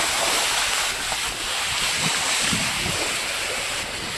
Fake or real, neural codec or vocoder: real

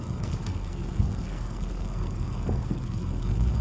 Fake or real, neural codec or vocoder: fake, codec, SNAC